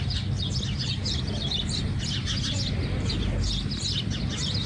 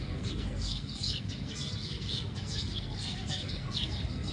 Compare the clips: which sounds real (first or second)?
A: first